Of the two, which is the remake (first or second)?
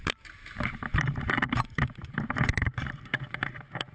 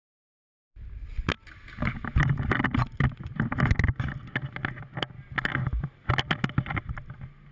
first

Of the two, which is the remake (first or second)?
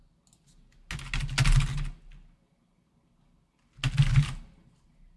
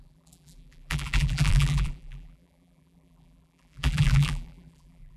second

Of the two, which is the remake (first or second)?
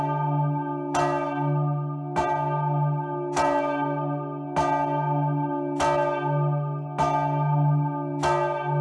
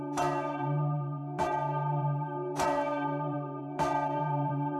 second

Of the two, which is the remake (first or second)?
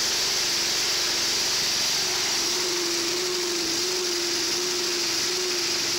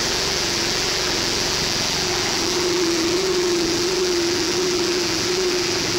second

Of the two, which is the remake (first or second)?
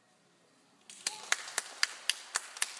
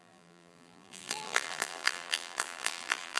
second